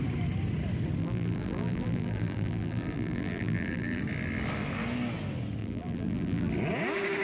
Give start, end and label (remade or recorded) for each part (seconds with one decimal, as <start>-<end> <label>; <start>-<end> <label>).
0.0-1.0 recorded; 1.0-4.0 remade; 4.0-5.6 recorded; 5.6-6.5 remade; 6.5-7.2 recorded